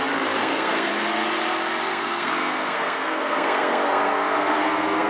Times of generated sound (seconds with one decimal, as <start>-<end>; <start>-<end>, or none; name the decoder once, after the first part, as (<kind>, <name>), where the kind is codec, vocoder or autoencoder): 0.4-0.9 (codec, SNAC); 1.9-5.1